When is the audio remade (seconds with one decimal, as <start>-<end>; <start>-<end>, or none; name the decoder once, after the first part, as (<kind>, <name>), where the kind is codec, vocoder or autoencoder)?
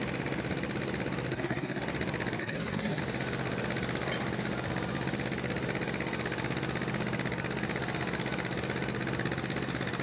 1.3-1.8 (codec, SNAC); 2.4-3.0